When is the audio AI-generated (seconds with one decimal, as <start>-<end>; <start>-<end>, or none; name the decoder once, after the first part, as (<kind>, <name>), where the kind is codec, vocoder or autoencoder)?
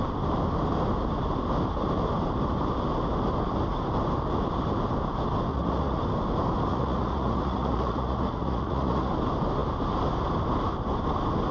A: 5.5-6.0 (vocoder, Vocos); 6.7-9.1